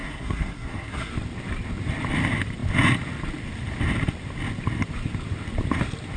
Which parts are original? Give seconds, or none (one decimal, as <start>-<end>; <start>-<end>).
1.1-6.2